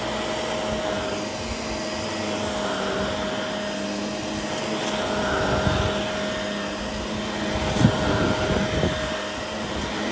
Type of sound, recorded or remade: recorded